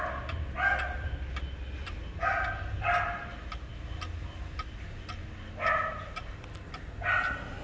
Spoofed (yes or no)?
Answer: no